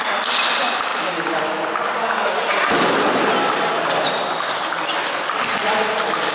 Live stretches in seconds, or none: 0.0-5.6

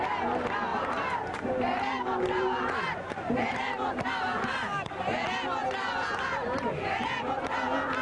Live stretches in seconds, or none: 0.0-0.7; 4.9-8.0

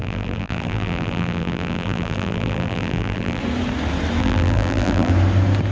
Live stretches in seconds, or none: 3.4-4.2; 5.1-5.7

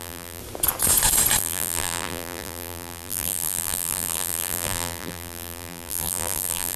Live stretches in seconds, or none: 0.4-1.4

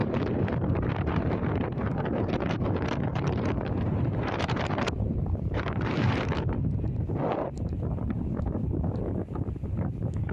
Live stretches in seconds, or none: 2.6-3.1; 6.7-10.3